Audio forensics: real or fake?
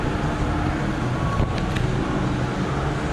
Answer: real